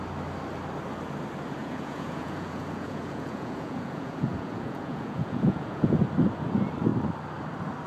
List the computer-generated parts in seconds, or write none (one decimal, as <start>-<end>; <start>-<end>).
1.6-6.0